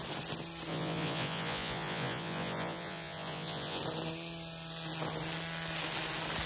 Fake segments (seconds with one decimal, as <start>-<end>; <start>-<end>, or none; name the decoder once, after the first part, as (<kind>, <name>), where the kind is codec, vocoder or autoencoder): 0.7-3.8 (vocoder, Vocos)